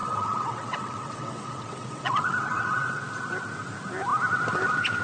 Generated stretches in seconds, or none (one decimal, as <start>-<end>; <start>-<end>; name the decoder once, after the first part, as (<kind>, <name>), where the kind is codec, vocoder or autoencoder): 0.0-3.0 (vocoder, WaveNeXt)